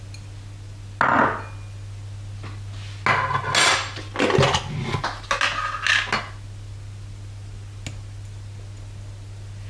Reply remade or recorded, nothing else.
recorded